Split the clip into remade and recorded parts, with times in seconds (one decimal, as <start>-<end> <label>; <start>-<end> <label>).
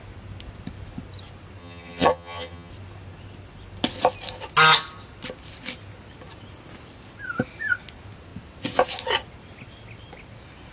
0.0-1.6 recorded; 1.6-2.7 remade; 2.7-10.7 recorded